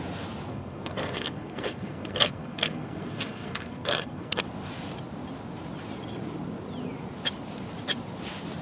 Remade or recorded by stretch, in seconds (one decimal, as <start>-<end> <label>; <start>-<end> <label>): 0.0-0.5 recorded; 0.5-4.4 remade; 4.4-8.6 recorded